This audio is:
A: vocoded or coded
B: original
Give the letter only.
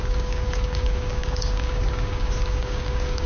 A